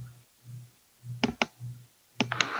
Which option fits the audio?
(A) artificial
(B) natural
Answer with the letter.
B